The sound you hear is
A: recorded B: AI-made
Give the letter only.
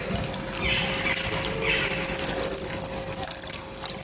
A